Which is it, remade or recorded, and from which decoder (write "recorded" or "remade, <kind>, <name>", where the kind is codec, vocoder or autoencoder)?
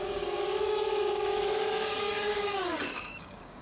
remade, codec, DAC